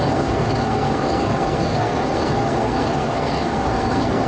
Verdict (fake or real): fake